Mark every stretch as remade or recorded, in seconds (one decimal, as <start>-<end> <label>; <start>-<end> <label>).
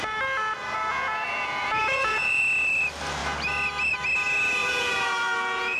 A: 0.0-0.9 recorded; 0.9-2.4 remade; 2.4-4.6 recorded; 4.6-5.8 remade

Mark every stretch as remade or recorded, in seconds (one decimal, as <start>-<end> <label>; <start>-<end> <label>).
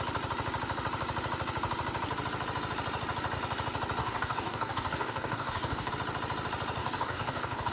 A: 0.0-4.0 recorded; 4.0-5.9 remade; 5.9-6.8 recorded; 6.8-7.7 remade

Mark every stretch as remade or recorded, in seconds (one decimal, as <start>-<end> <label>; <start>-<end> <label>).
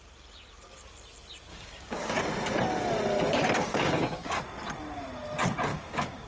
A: 0.0-1.5 recorded; 1.5-2.2 remade; 2.2-3.6 recorded; 3.6-4.4 remade; 4.4-5.7 recorded; 5.7-6.3 remade